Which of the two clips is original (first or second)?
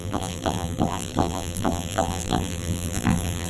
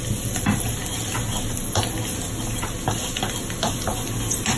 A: second